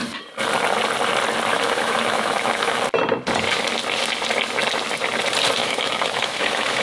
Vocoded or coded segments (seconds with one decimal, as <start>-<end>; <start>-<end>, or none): 1.5-2.8; 5.6-6.8